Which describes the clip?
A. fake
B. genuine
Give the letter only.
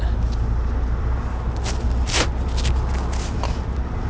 B